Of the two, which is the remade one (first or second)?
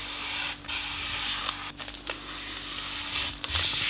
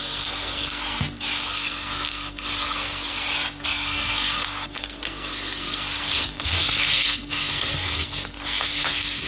second